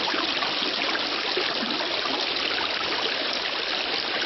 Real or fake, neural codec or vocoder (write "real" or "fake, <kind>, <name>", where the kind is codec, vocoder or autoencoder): real